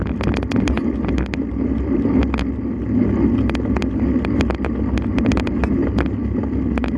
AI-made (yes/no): no